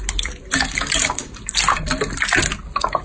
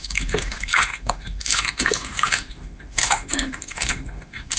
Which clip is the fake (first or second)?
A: second